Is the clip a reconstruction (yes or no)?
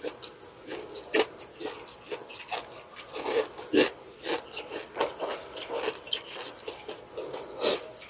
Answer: no